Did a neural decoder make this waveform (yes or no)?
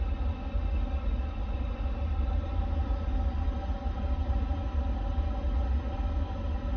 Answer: no